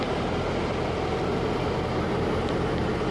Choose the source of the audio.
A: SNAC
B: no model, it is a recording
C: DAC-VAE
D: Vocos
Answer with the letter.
B